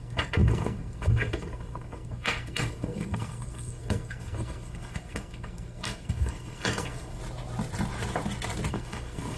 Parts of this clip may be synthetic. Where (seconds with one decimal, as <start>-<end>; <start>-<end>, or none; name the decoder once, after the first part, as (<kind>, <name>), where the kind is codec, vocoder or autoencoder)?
0.0-7.2 (codec, SNAC); 8.7-9.4